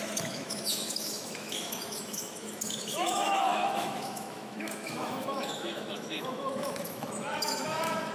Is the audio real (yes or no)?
no